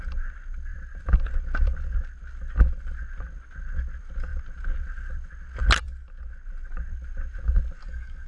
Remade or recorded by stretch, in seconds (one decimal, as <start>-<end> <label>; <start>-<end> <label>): 0.0-7.8 recorded; 7.8-8.3 remade